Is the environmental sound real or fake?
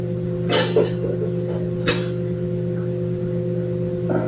real